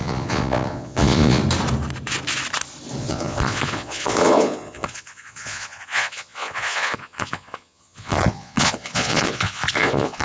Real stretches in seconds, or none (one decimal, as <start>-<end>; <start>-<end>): 1.4-3.0